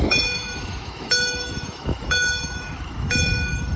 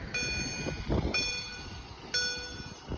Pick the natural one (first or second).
second